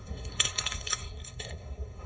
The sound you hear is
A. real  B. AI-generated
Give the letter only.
B